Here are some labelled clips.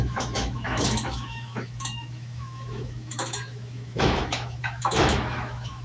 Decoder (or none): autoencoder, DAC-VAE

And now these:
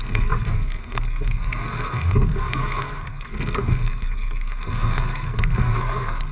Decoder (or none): codec, SNAC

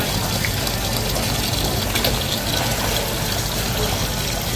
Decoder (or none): none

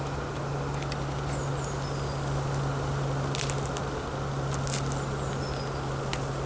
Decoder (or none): none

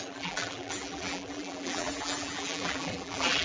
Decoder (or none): vocoder, BigVGAN v2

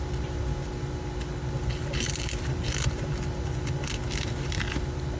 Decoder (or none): none